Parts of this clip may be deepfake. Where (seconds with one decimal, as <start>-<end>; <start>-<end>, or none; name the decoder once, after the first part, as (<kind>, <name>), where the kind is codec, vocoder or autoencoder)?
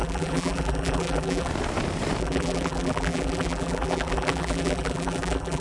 0.0-1.5 (vocoder, BigVGAN v2); 2.2-5.6